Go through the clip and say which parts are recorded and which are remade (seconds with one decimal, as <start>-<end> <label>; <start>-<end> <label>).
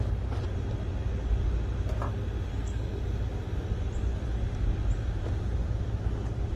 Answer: 0.0-2.5 recorded; 2.5-3.0 remade; 3.0-6.6 recorded